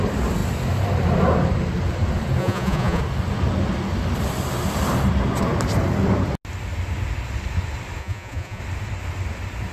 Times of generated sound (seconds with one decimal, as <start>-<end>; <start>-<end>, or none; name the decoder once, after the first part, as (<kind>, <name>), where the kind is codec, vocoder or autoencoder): 2.4-3.0 (vocoder, Vocos); 8.0-8.6